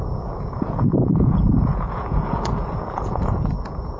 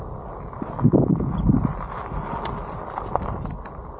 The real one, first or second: second